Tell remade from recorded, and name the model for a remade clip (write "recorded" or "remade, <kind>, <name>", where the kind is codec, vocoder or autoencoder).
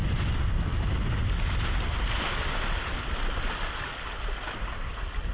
recorded